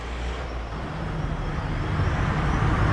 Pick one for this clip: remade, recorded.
recorded